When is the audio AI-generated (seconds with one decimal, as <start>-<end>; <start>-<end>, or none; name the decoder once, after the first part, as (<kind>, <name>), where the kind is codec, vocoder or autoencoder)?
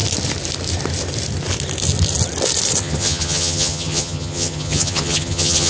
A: 2.8-5.7 (vocoder, HiFi-GAN)